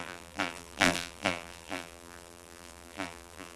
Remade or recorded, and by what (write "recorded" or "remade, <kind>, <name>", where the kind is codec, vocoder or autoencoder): remade, vocoder, BigVGAN v2